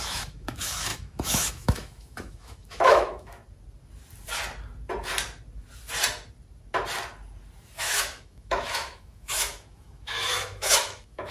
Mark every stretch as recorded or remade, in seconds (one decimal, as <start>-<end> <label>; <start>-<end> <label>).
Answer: 0.0-3.4 remade; 3.4-7.8 recorded; 7.8-11.3 remade